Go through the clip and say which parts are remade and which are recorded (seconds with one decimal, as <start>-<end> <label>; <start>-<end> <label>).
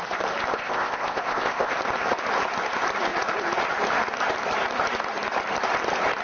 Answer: 0.0-0.5 recorded; 0.5-1.7 remade; 1.7-6.2 recorded